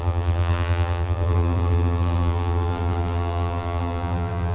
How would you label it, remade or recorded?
remade